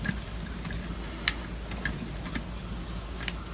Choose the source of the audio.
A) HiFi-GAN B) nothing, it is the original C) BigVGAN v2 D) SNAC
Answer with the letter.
B